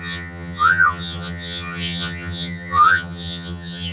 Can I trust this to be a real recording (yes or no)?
no